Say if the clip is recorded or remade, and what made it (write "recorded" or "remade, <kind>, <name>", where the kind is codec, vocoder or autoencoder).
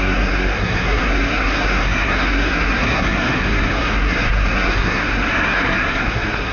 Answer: remade, codec, SNAC